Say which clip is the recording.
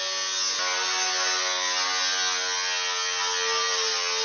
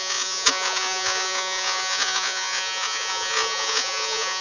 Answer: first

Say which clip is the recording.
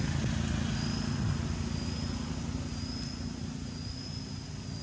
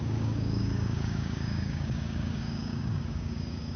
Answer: first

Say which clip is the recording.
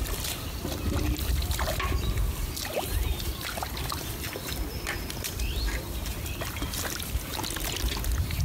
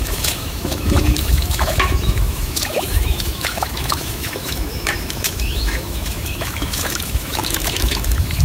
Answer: first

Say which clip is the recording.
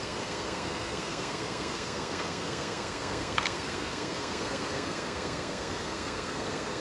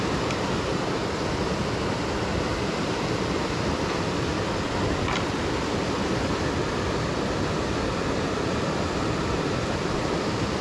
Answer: second